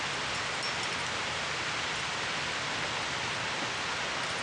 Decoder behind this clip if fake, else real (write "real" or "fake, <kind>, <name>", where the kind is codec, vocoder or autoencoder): real